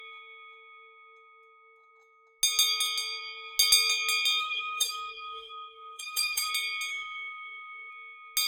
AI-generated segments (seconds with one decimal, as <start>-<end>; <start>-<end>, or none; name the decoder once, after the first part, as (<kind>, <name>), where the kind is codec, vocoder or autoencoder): 4.4-6.5 (autoencoder, DAC-VAE); 6.9-7.9